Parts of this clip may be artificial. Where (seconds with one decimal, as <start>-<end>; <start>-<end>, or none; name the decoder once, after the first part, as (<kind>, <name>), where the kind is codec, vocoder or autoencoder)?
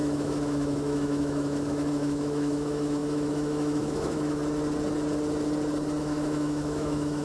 0.0-4.4 (autoencoder, DAC-VAE); 6.0-7.2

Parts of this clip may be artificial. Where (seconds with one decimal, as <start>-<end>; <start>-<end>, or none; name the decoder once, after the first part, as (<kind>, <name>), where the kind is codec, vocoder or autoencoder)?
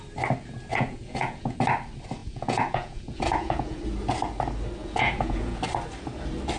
0.7-1.6 (vocoder, Vocos); 2.2-3.8; 4.8-5.6